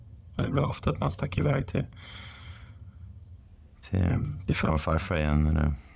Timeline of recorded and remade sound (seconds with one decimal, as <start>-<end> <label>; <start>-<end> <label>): 0.0-3.4 remade; 3.4-4.1 recorded; 4.1-4.7 remade; 4.7-6.0 recorded